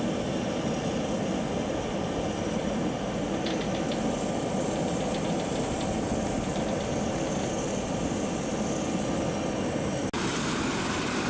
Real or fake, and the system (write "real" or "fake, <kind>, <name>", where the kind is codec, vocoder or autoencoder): real